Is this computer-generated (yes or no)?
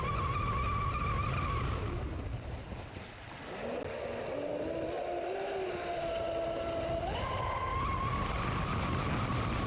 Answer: no